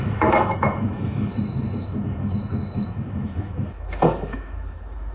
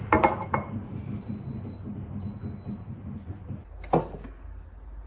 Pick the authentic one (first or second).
second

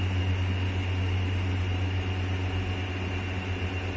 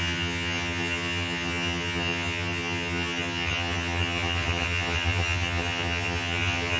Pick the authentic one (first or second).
first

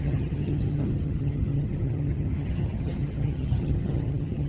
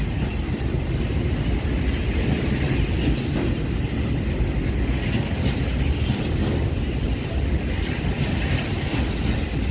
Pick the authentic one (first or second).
second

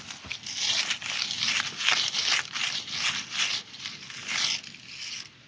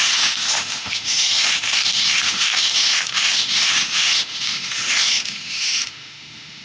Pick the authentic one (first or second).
first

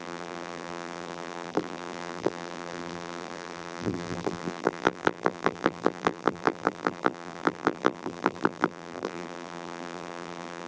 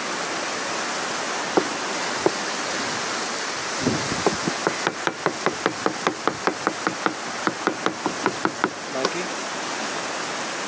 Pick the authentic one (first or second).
second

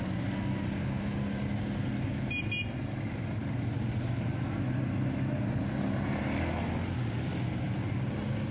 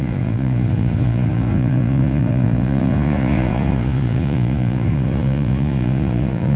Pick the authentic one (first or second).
first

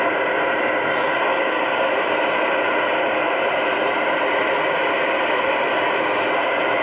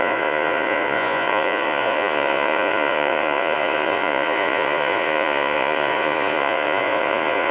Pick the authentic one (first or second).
first